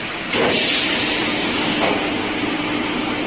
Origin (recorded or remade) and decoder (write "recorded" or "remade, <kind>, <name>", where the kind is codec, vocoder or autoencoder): recorded